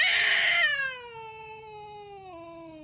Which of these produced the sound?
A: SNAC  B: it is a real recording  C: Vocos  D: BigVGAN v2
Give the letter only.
B